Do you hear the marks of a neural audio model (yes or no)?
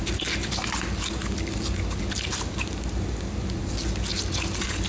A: no